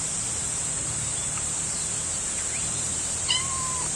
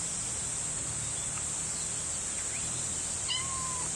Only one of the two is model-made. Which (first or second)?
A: first